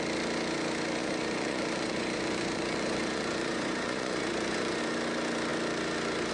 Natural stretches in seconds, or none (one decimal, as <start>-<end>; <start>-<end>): 0.0-1.0; 4.8-6.3